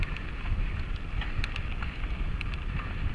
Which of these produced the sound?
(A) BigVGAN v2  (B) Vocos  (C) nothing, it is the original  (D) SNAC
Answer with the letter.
C